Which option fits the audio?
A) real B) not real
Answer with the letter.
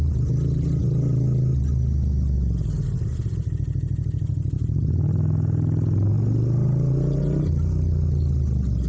A